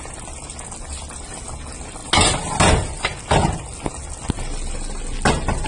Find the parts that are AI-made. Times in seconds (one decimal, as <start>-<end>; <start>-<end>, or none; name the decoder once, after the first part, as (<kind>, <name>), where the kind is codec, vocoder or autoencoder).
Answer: none